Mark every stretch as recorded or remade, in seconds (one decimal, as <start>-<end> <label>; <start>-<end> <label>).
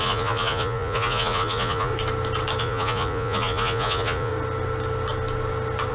0.0-1.9 remade; 1.9-2.6 recorded; 2.6-4.3 remade; 4.3-5.9 recorded